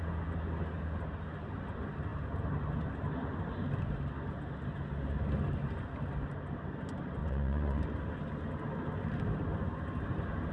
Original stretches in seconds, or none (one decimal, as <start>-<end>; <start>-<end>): 0.0-7.2; 7.8-10.5